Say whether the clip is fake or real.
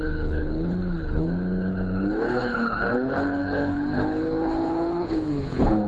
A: fake